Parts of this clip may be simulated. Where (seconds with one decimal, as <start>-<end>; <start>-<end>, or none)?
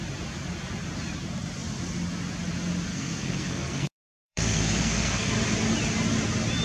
2.9-5.3